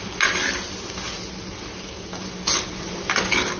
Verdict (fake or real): real